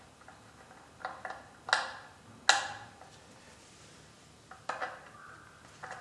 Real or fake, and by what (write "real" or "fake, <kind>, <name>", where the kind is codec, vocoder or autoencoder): real